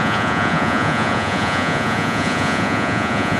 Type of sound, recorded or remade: remade